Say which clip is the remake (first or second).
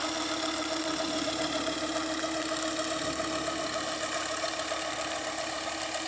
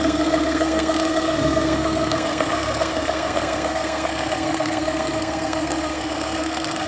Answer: second